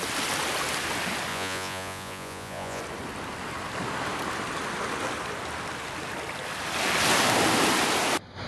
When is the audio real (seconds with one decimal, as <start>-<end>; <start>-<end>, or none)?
0.0-1.3; 2.8-8.5